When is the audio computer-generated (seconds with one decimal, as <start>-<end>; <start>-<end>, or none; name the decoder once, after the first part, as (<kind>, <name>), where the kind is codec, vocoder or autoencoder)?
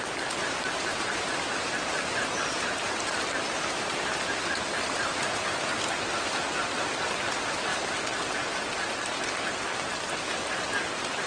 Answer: none